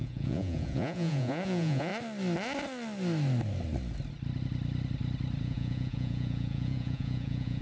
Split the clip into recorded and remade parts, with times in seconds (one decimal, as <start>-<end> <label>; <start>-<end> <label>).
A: 0.0-1.9 remade; 1.9-5.4 recorded; 5.4-7.6 remade